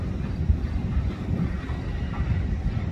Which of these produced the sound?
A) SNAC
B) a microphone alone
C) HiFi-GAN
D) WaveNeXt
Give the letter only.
B